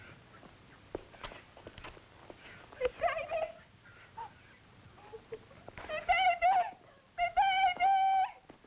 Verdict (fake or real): real